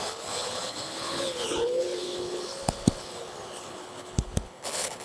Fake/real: fake